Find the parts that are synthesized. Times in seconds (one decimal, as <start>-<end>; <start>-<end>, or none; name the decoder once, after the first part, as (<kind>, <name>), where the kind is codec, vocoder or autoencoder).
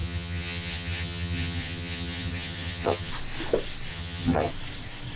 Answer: 0.0-3.1 (vocoder, HiFi-GAN); 3.9-4.5